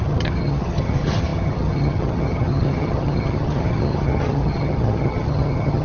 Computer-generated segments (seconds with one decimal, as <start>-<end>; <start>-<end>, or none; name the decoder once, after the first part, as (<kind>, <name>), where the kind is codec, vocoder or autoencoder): 0.0-5.8 (vocoder, HiFi-GAN)